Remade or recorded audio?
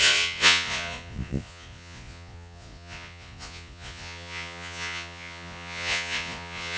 remade